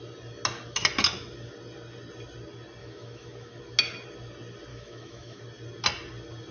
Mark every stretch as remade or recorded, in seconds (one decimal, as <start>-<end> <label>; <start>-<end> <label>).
0.0-2.8 recorded; 2.8-3.6 remade; 3.6-4.7 recorded; 4.7-5.4 remade; 5.4-6.5 recorded